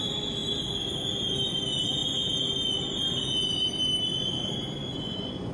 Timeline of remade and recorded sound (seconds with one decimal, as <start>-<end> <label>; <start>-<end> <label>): 0.0-4.8 recorded; 4.8-5.5 remade